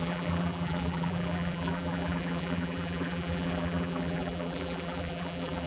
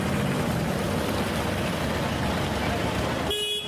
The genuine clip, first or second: second